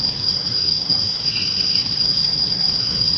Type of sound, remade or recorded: remade